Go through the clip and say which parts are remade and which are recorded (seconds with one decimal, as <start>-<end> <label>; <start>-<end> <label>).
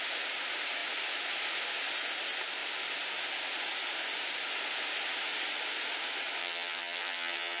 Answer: 0.0-6.4 recorded; 6.4-7.6 remade